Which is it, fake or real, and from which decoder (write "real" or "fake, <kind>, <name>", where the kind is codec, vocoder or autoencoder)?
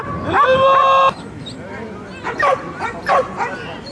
real